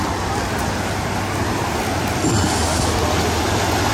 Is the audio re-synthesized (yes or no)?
no